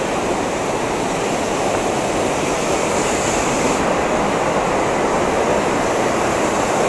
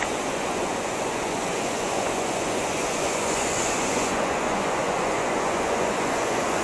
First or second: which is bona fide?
first